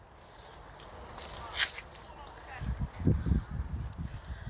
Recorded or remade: recorded